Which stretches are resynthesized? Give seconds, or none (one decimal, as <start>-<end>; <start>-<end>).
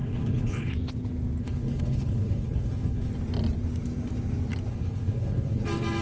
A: 0.0-0.7; 1.4-3.1; 4.7-5.6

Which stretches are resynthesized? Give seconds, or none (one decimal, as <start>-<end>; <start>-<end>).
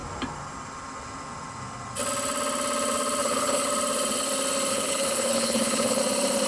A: 3.2-3.7; 4.7-6.0